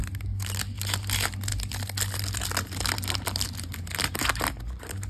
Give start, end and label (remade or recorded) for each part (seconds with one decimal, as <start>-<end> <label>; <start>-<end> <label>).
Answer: 0.0-5.1 recorded